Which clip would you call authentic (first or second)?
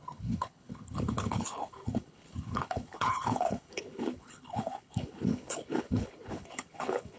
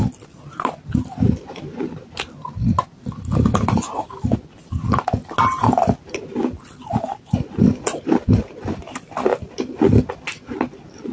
second